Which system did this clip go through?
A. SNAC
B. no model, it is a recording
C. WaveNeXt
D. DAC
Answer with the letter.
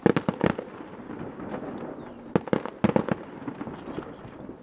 B